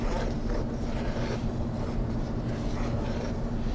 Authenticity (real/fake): fake